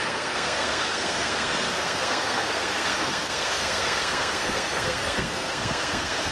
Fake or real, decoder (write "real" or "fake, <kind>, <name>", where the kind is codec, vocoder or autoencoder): fake, codec, SNAC